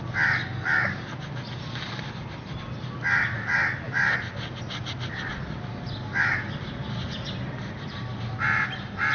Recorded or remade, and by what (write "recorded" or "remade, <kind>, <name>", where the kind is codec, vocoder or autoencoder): recorded